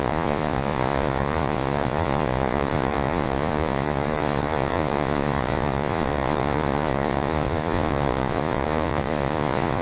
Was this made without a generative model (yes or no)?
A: no